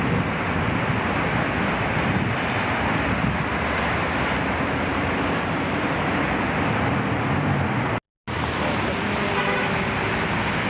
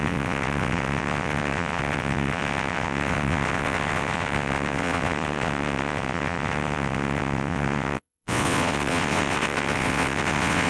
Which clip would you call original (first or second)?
first